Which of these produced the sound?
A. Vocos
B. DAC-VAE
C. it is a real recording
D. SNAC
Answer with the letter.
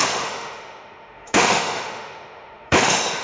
B